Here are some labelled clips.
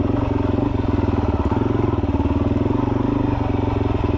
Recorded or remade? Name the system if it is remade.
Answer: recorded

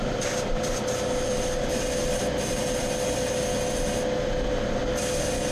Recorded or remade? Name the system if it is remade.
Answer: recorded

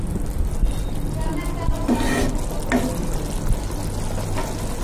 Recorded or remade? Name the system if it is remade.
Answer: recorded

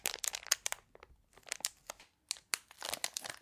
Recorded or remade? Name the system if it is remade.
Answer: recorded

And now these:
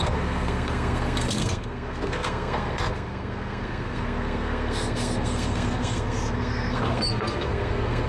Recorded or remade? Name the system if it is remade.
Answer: remade, codec, SNAC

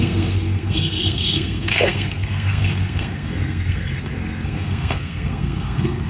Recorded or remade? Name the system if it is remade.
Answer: remade, codec, SNAC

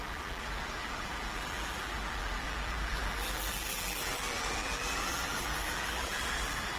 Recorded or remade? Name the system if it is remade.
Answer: remade, vocoder, BigVGAN v2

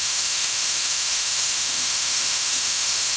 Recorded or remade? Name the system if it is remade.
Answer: remade, autoencoder, DAC-VAE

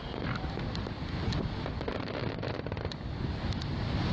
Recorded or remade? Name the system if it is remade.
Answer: recorded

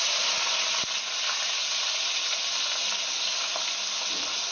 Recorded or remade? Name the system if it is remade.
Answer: recorded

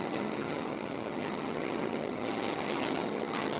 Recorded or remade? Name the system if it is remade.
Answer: remade, vocoder, HiFi-GAN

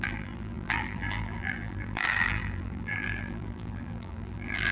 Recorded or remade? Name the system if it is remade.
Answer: remade, vocoder, BigVGAN v2